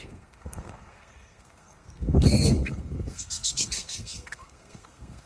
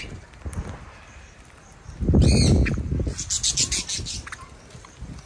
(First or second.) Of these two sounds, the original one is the second